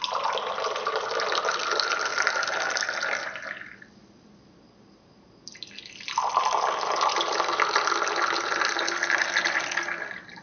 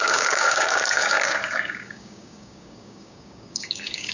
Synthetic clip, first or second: second